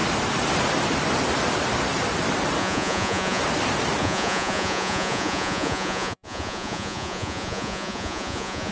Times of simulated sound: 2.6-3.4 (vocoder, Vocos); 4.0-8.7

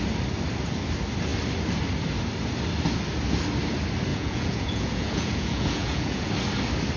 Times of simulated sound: 4.1-6.3 (vocoder, Vocos)

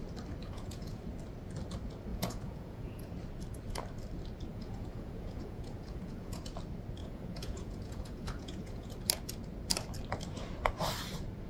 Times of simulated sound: 0.4-1.0 (vocoder, Vocos); 2.1-3.1; 4.5-6.4; 7.0-8.9

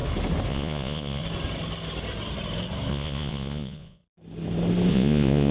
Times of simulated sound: 0.5-1.2 (vocoder, Vocos); 2.9-4.0; 4.9-5.5